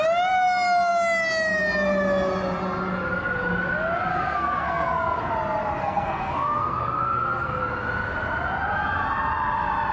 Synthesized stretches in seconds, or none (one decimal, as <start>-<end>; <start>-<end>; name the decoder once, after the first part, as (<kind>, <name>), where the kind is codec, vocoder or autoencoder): 4.1-5.3 (codec, SNAC); 5.8-7.6